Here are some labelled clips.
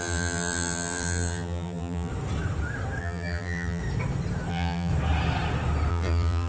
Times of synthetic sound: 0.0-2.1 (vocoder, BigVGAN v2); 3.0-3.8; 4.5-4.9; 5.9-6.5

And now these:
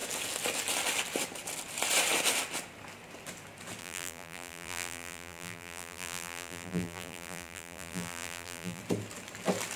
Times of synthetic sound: 3.8-8.8 (vocoder, BigVGAN v2)

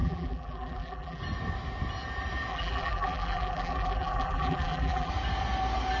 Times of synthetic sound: 0.0-1.2 (vocoder, BigVGAN v2); 2.5-5.1

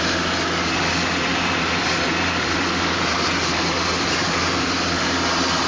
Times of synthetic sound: 1.3-4.7 (vocoder, BigVGAN v2)

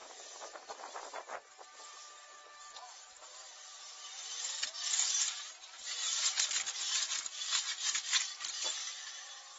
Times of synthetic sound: 0.0-1.6 (vocoder, BigVGAN v2); 3.9-4.4; 6.0-6.5